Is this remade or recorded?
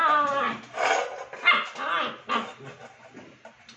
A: recorded